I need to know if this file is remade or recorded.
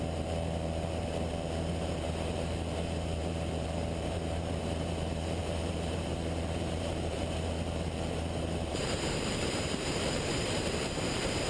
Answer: remade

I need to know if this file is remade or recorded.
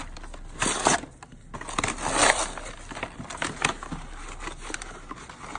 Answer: recorded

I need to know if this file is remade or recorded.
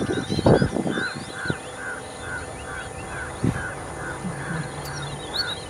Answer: recorded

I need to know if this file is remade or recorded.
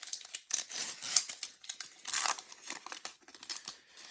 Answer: recorded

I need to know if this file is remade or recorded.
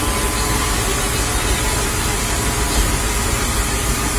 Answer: recorded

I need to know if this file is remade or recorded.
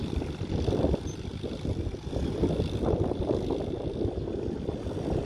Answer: recorded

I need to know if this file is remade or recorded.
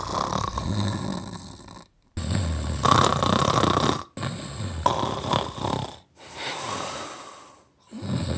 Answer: recorded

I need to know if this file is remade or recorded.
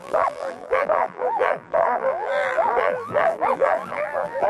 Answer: remade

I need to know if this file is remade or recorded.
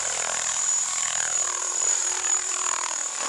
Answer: remade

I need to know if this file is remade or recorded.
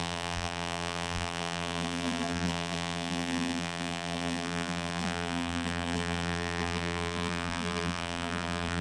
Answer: remade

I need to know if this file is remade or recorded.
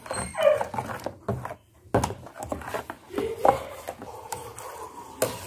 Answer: recorded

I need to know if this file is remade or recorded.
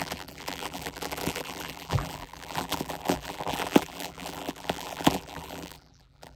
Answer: remade